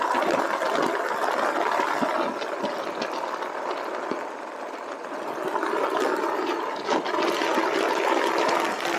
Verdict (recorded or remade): remade